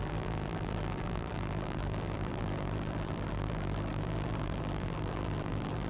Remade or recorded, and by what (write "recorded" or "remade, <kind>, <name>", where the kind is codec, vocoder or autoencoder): remade, vocoder, BigVGAN v2